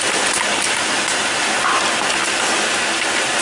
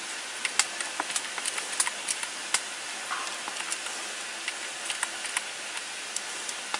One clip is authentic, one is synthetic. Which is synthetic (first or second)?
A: first